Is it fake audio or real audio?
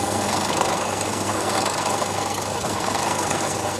fake